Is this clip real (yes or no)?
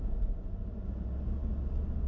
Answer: yes